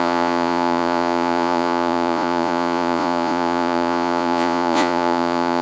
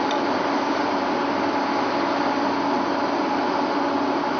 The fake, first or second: first